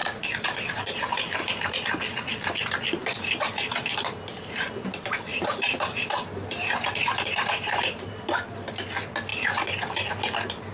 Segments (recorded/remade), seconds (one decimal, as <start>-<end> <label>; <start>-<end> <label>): 0.0-1.7 remade; 1.7-3.0 recorded; 3.0-4.7 remade; 4.7-5.3 recorded; 5.3-8.7 remade; 8.7-10.7 recorded

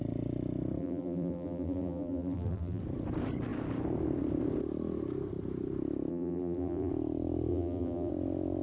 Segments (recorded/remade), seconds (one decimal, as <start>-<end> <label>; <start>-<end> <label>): 0.0-0.8 recorded; 0.8-2.8 remade; 2.8-6.1 recorded; 6.1-6.9 remade; 6.9-7.5 recorded; 7.5-8.1 remade; 8.1-8.6 recorded

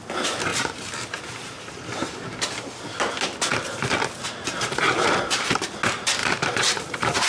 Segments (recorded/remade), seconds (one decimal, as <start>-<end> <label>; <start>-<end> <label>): 0.0-0.5 recorded; 0.5-2.7 remade; 2.7-6.2 recorded; 6.2-7.3 remade

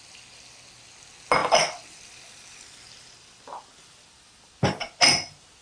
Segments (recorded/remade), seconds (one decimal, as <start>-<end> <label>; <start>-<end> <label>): 0.0-1.4 recorded; 1.4-4.8 remade; 4.8-5.6 recorded

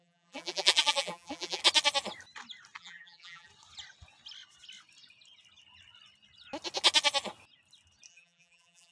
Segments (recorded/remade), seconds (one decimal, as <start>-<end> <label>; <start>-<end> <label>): 0.0-1.6 remade; 1.6-2.8 recorded; 2.8-3.5 remade; 3.5-8.1 recorded; 8.1-8.9 remade